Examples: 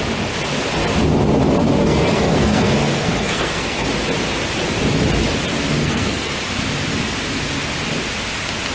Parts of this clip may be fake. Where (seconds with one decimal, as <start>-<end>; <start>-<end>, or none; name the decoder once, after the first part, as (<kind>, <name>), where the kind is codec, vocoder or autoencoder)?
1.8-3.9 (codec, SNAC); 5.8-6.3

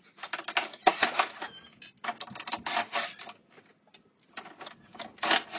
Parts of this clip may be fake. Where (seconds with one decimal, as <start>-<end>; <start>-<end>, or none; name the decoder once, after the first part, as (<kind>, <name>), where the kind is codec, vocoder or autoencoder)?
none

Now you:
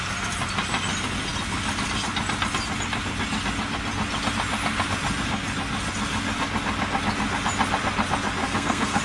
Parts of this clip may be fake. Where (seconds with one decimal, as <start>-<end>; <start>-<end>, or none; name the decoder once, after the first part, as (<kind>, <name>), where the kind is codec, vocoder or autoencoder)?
8.4-9.0 (codec, SNAC)

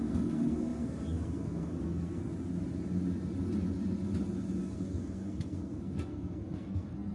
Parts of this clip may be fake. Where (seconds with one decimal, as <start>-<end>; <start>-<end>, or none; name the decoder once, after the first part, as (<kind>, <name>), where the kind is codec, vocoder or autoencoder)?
0.0-2.2 (codec, SNAC); 4.6-7.1